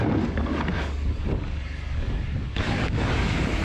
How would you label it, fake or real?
fake